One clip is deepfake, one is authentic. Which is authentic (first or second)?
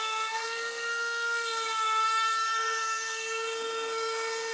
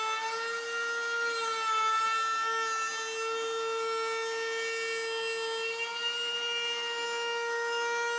second